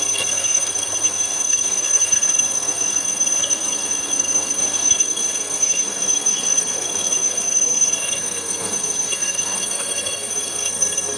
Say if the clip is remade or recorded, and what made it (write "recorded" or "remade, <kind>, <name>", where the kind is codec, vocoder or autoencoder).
remade, codec, SNAC